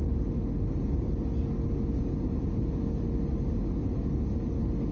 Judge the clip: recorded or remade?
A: recorded